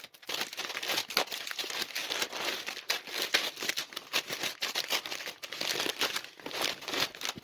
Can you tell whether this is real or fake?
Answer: real